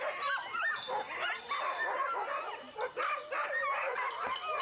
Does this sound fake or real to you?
real